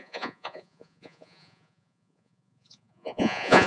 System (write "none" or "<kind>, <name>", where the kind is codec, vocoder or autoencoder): vocoder, Vocos